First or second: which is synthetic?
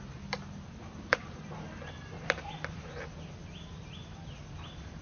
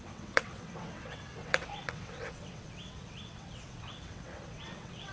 second